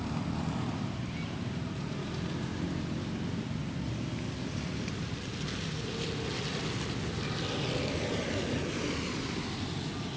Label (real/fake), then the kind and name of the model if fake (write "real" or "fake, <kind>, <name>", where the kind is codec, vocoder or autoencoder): real